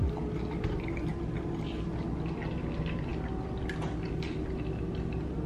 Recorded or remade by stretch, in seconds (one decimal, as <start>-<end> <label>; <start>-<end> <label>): 0.0-5.5 recorded